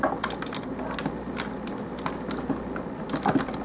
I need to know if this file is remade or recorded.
recorded